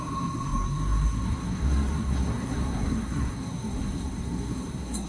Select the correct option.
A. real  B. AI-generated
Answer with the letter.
B